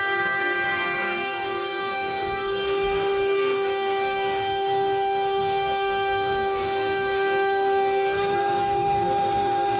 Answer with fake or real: fake